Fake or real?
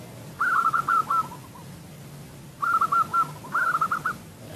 real